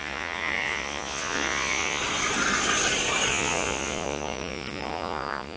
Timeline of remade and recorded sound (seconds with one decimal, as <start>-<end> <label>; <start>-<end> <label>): 0.0-2.0 remade; 2.0-3.3 recorded; 3.3-5.6 remade

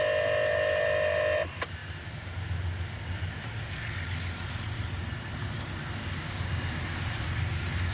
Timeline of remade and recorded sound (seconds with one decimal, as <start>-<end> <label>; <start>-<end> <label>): 0.0-6.0 recorded; 6.0-6.8 remade; 6.8-7.9 recorded

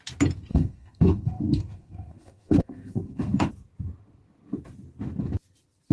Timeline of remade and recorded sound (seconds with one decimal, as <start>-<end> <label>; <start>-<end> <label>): 0.0-0.5 recorded; 0.5-3.5 remade; 3.5-5.9 recorded

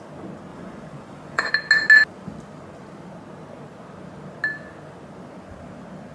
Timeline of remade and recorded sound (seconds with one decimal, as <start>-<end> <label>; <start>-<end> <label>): 0.0-0.5 recorded; 0.5-1.5 remade; 1.5-6.1 recorded

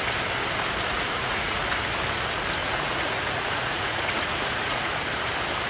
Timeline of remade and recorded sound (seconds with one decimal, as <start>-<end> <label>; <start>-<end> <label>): 0.0-0.9 recorded; 0.9-1.6 remade; 1.6-2.6 recorded; 2.6-4.9 remade; 4.9-5.7 recorded

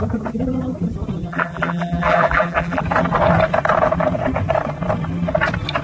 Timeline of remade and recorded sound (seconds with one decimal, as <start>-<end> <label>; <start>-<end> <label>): 0.0-1.3 recorded; 1.3-2.8 remade; 2.8-5.8 recorded